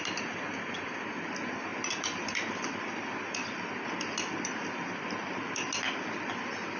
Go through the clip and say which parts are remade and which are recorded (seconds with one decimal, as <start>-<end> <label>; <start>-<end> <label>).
0.0-6.8 recorded